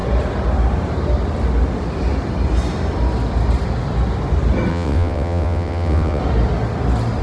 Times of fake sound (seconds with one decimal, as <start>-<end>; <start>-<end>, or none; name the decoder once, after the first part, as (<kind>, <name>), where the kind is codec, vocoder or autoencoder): 4.7-6.2 (vocoder, WaveNeXt)